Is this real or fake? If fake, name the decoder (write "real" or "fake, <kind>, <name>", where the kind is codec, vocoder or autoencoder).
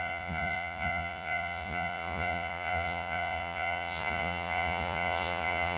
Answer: fake, vocoder, Vocos